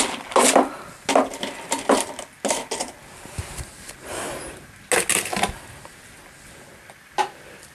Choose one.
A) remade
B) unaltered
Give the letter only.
B